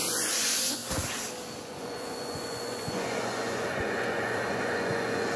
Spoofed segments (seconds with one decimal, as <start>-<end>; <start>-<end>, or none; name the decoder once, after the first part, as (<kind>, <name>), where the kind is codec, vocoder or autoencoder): 0.0-0.8 (vocoder, Vocos); 1.6-5.4